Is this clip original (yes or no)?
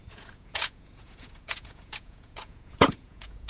no